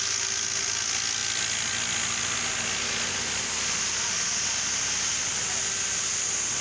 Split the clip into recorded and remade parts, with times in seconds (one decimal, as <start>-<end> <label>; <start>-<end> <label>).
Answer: 0.0-6.6 recorded